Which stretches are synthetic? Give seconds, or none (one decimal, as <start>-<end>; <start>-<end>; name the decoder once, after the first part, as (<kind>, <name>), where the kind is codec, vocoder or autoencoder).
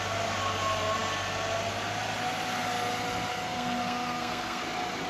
3.3-4.6 (codec, SNAC)